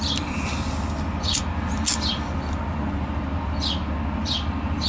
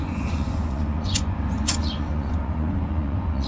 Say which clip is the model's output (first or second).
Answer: second